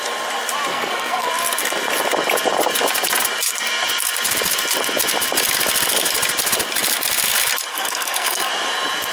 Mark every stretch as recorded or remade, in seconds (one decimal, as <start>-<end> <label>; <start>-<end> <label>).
0.0-0.7 recorded; 0.7-1.3 remade; 1.3-7.7 recorded; 7.7-8.5 remade; 8.5-9.1 recorded